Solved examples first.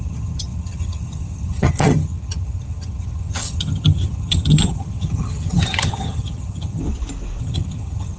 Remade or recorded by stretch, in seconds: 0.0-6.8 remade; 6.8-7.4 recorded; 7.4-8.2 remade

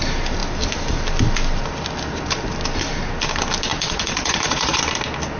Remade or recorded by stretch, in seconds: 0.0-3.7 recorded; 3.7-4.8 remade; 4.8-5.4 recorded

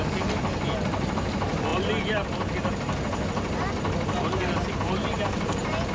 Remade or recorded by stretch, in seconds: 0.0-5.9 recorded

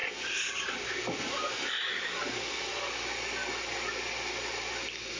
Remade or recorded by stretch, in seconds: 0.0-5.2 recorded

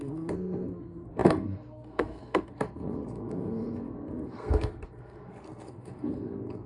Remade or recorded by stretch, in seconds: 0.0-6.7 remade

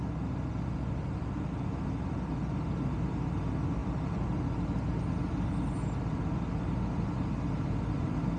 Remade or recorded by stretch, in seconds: 0.0-8.4 recorded

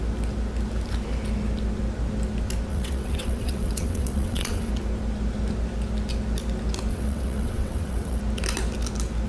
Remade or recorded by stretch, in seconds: 0.0-2.7 recorded; 2.7-4.7 remade; 4.7-6.9 recorded; 6.9-8.2 remade; 8.2-9.3 recorded

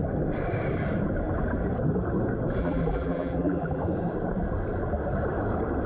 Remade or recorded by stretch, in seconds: 0.0-2.6 recorded; 2.6-3.8 remade; 3.8-5.9 recorded